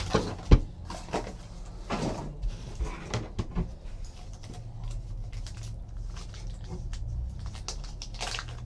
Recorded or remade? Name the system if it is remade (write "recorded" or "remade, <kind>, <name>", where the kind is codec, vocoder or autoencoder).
recorded